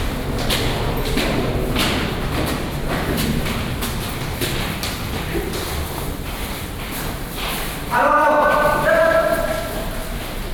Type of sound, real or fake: fake